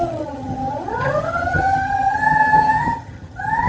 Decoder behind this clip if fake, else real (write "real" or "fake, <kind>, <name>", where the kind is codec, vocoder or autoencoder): fake, vocoder, HiFi-GAN